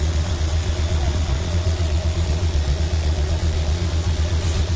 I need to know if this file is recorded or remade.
remade